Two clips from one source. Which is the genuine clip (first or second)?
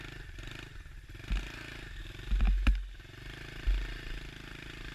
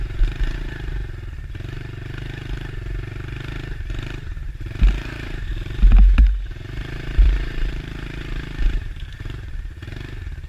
first